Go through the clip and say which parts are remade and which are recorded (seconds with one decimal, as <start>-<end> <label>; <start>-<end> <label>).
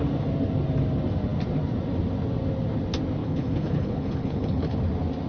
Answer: 0.0-3.2 recorded; 3.2-4.8 remade; 4.8-5.3 recorded